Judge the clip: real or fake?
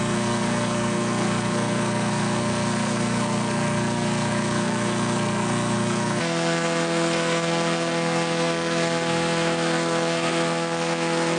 fake